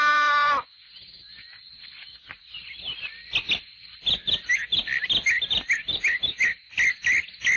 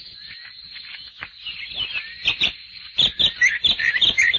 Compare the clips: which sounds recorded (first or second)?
first